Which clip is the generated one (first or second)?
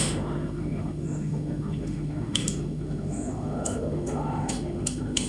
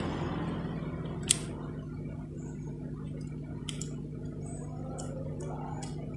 first